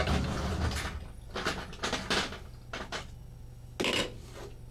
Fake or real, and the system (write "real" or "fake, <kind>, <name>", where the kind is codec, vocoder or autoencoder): real